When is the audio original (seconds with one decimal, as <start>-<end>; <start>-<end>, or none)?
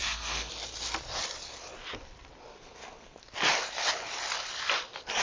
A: 0.5-2.5; 3.2-5.2